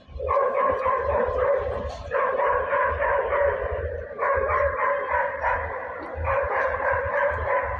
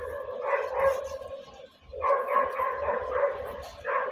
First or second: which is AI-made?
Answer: first